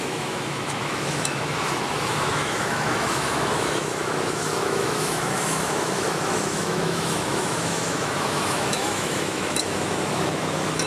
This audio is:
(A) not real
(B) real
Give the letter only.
A